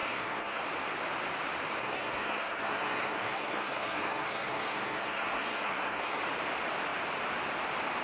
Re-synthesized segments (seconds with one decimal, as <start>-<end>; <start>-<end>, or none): 0.0-0.6; 1.8-6.2